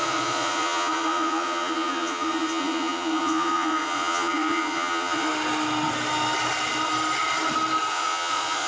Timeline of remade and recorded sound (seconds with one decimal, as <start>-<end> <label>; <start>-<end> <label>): 0.0-5.3 remade; 5.3-7.9 recorded; 7.9-8.7 remade